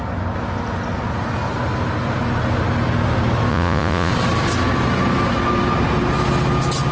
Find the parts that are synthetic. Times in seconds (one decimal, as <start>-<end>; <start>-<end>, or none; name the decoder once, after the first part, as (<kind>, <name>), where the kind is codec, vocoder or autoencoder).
3.5-4.1 (vocoder, Vocos)